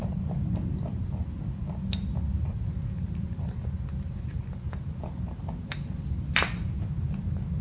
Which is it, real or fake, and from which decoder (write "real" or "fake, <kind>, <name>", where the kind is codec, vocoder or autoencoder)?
real